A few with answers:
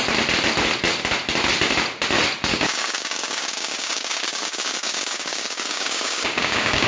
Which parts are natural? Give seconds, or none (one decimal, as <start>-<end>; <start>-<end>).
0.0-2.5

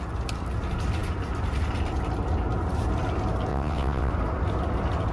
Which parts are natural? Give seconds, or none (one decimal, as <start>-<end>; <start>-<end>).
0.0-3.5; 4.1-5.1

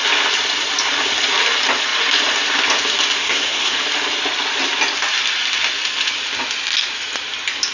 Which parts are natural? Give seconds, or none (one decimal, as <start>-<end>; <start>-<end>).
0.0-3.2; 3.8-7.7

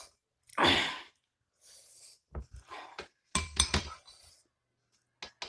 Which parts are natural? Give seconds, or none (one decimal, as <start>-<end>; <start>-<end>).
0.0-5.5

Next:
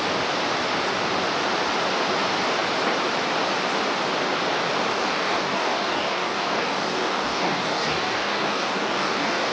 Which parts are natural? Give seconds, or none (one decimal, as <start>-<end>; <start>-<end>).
0.0-4.9